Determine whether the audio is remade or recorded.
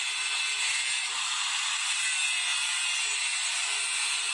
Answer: recorded